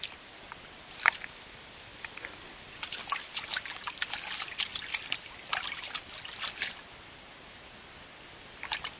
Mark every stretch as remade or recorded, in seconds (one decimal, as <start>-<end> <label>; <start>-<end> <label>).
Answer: 0.0-4.7 remade; 4.7-5.5 recorded; 5.5-9.0 remade